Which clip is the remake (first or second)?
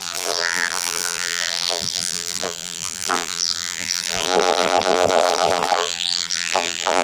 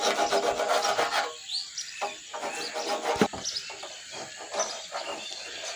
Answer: first